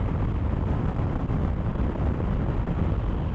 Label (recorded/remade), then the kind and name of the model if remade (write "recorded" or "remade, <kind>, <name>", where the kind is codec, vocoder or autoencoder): remade, vocoder, BigVGAN v2